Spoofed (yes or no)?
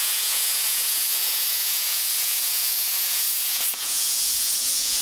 yes